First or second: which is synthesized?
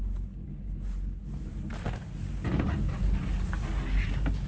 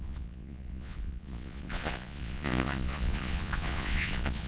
second